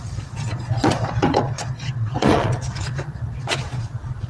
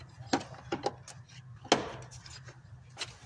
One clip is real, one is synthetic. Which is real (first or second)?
second